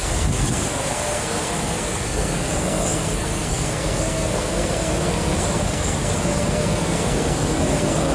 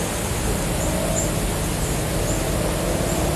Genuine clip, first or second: second